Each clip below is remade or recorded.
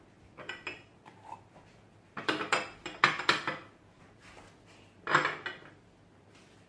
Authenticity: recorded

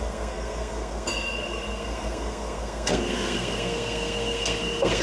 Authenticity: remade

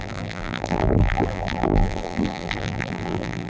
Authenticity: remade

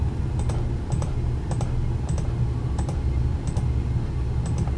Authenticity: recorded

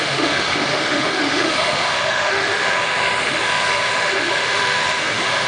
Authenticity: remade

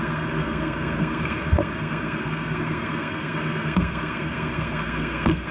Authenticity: remade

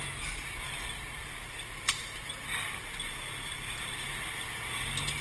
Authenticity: recorded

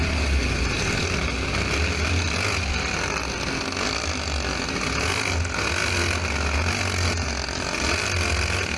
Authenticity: recorded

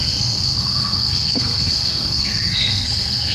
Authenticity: remade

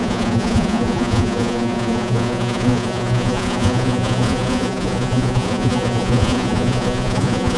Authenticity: remade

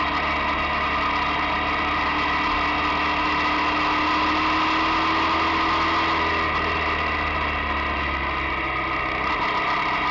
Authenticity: recorded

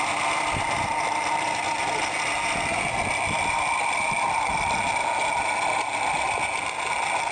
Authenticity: recorded